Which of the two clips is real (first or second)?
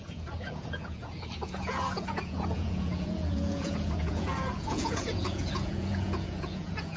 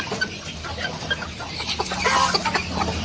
second